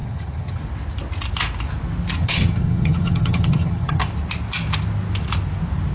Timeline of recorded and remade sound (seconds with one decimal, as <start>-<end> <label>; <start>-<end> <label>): 0.0-0.6 remade; 0.6-2.2 recorded; 2.2-4.0 remade; 4.0-5.9 recorded